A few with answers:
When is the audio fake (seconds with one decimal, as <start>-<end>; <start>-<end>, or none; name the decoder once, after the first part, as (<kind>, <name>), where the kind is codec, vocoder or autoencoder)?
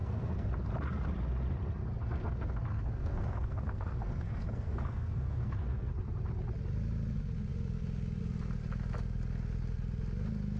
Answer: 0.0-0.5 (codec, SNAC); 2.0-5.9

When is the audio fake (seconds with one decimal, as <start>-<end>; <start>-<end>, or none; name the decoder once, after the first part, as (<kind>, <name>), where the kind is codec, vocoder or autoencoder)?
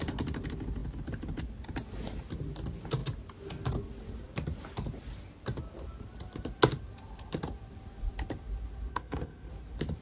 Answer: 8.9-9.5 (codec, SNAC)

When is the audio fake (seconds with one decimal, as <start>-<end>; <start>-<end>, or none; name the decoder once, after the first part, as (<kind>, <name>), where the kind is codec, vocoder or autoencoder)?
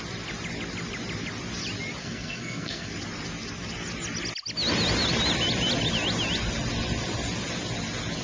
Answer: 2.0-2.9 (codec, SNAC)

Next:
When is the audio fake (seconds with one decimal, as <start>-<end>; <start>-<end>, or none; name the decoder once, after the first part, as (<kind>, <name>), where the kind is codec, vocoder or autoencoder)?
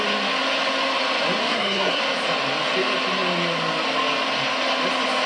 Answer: 1.4-2.0 (codec, SNAC)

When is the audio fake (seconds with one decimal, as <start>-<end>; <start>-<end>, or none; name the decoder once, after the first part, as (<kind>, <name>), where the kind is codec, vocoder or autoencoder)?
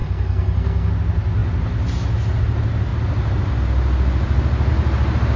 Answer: 0.0-0.9 (codec, SNAC)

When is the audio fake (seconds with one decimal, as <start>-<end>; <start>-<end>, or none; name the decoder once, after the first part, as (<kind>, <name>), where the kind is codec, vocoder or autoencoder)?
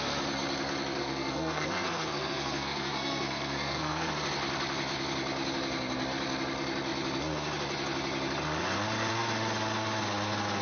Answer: 1.0-4.1 (codec, SNAC)